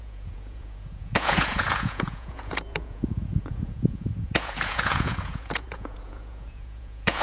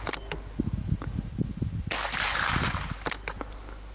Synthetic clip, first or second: first